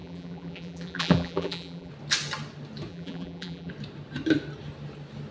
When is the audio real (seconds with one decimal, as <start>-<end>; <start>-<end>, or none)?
1.9-2.9; 3.7-5.3